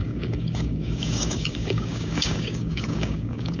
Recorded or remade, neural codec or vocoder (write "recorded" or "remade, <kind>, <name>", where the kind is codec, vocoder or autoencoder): remade, codec, DAC